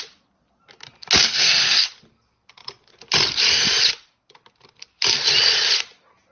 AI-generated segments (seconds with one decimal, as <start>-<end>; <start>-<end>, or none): 1.2-1.9